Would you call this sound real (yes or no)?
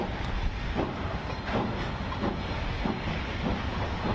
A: yes